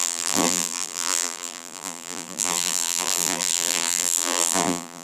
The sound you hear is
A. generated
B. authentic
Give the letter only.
A